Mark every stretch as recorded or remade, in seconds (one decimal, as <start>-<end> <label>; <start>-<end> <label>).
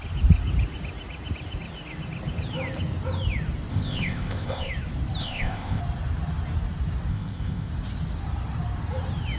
0.0-3.7 recorded; 3.7-4.7 remade; 4.7-5.2 recorded; 5.2-5.8 remade; 5.8-7.1 recorded; 7.1-7.7 remade; 7.7-9.4 recorded